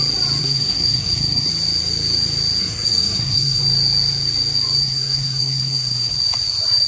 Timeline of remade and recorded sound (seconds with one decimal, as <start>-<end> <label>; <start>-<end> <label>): 0.0-0.4 recorded; 0.4-1.5 remade; 1.5-2.6 recorded; 2.6-3.6 remade; 3.6-4.8 recorded; 4.8-6.1 remade; 6.1-6.9 recorded